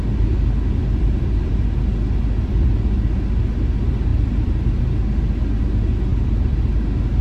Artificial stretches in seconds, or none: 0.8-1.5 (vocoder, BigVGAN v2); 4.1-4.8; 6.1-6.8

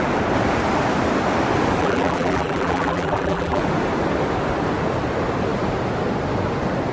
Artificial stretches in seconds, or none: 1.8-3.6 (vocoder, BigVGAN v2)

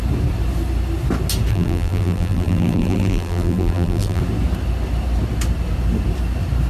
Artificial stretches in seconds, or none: 1.5-4.2 (vocoder, BigVGAN v2)